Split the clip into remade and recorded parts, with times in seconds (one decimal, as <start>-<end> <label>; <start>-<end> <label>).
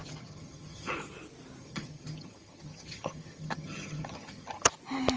0.0-0.9 remade; 0.9-1.6 recorded; 1.6-4.7 remade; 4.7-5.2 recorded